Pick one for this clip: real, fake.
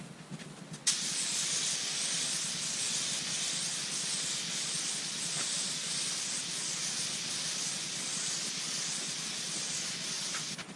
real